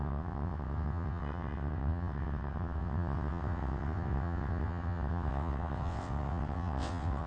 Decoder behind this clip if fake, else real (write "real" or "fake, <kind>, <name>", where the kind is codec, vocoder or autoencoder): fake, vocoder, WaveNeXt